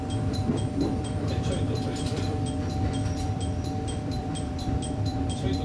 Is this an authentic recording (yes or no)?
no